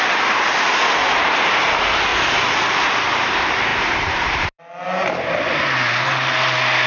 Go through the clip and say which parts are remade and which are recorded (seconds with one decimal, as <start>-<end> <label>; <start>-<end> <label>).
0.0-2.1 recorded; 2.1-2.9 remade; 2.9-3.7 recorded; 3.7-4.6 remade; 4.6-6.9 recorded